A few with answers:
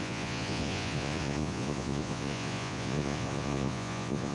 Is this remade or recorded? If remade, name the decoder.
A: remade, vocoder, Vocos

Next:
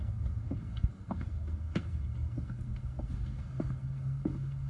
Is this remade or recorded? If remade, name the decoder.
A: remade, codec, SNAC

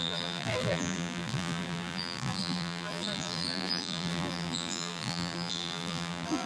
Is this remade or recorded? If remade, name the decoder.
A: remade, vocoder, BigVGAN v2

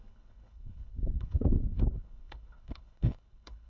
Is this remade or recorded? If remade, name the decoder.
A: remade, codec, HILCodec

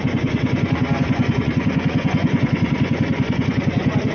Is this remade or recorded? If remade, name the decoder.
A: remade, vocoder, Vocos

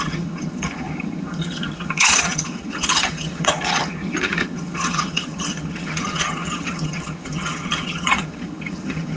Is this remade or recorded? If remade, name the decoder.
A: remade, vocoder, HiFi-GAN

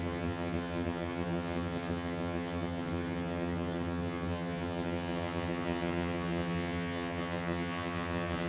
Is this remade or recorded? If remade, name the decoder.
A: remade, vocoder, HiFi-GAN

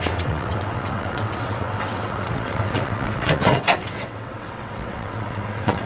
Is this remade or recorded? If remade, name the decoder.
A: remade, vocoder, WaveNeXt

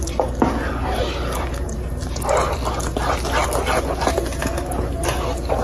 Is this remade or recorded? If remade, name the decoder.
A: recorded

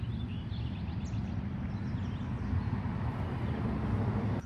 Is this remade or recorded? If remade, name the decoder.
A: recorded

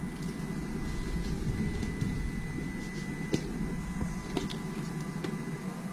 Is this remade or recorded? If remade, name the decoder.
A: recorded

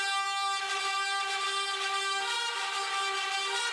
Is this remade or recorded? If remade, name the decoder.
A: remade, vocoder, BigVGAN v2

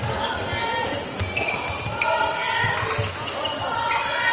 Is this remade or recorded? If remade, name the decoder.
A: recorded